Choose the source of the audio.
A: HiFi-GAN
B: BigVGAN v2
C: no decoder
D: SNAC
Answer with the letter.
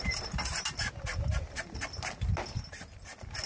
C